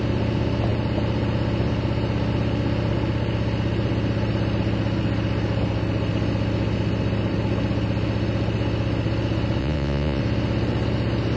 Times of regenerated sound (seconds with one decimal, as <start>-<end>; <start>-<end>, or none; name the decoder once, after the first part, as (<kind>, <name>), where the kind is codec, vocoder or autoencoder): 9.6-10.2 (vocoder, Vocos)